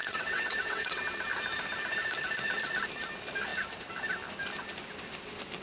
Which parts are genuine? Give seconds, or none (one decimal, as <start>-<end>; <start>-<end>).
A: 1.0-5.6